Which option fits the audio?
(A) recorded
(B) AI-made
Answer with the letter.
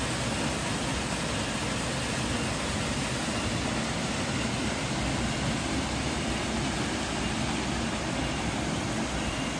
A